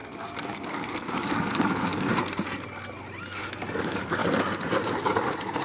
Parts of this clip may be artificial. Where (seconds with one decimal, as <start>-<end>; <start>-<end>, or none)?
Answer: 0.0-2.1; 3.8-4.2; 4.9-5.6